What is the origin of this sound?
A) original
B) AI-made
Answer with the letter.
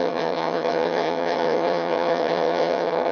B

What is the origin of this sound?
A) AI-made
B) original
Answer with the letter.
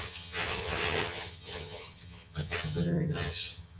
A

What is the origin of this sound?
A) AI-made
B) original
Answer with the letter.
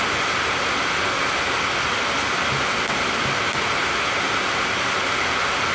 B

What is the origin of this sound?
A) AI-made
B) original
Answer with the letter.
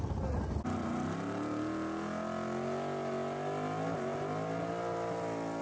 B